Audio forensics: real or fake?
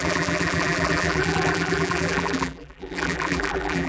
fake